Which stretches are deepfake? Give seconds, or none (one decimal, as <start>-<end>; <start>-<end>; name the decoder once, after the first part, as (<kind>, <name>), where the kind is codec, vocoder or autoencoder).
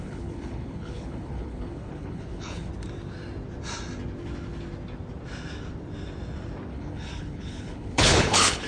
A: 0.0-2.7 (codec, HILCodec); 6.7-8.7